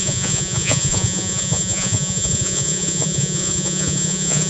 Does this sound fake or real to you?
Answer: fake